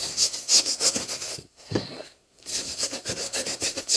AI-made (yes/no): yes